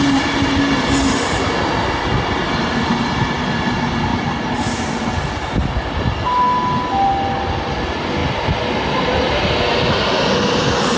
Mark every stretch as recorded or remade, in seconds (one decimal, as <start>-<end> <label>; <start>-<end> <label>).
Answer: 0.0-11.0 recorded